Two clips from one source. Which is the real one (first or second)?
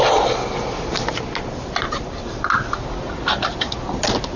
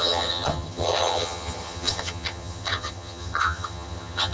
first